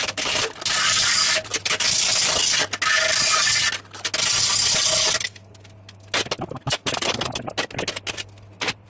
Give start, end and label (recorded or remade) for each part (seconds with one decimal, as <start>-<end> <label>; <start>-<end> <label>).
0.0-8.9 recorded